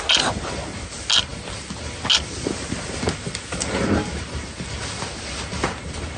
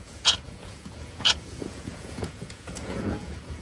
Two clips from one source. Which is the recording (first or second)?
first